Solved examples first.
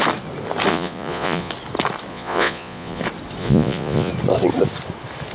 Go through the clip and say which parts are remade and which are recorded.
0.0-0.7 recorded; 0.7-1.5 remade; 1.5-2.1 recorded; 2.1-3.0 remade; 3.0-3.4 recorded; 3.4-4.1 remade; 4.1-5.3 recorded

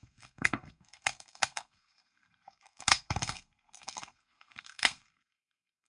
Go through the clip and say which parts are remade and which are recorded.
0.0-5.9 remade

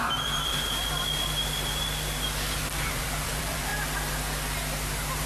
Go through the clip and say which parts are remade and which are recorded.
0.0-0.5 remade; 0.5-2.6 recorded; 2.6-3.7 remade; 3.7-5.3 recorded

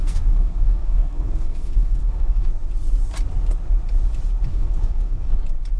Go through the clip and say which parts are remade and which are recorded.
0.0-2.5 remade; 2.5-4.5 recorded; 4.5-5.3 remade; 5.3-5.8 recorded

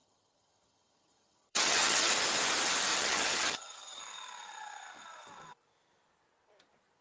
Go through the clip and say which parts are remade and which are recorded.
0.0-2.1 remade; 2.1-2.9 recorded; 2.9-4.0 remade; 4.0-7.0 recorded

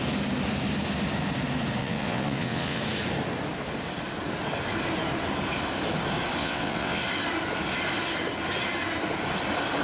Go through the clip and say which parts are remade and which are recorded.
0.0-1.8 recorded; 1.8-2.8 remade; 2.8-6.4 recorded; 6.4-7.0 remade; 7.0-9.8 recorded

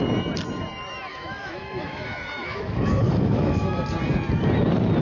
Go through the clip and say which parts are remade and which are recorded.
0.0-1.1 recorded; 1.1-3.8 remade; 3.8-5.0 recorded